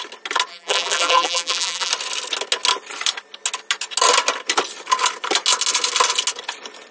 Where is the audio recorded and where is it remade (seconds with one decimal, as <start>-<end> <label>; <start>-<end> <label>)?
0.0-0.5 recorded; 0.5-1.9 remade; 1.9-6.9 recorded